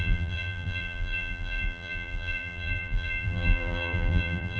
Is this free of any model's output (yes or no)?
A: no